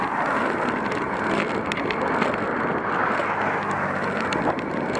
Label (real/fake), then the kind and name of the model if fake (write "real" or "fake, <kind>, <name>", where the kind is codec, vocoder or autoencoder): real